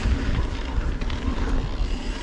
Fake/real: real